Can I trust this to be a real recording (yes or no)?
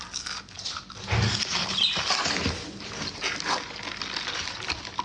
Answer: yes